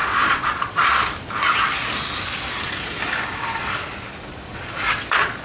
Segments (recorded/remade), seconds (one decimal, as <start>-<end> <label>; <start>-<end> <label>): 0.0-0.9 remade; 0.9-4.5 recorded; 4.5-5.4 remade